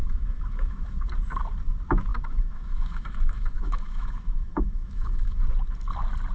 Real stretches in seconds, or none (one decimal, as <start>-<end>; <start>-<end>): 1.1-2.1; 5.4-6.3